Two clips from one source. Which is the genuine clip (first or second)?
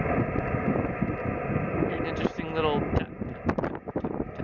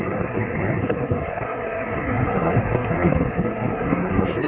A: first